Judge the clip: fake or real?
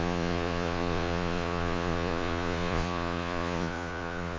fake